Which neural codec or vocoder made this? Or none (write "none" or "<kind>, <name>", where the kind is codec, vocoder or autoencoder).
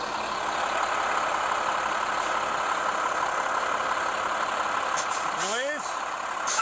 none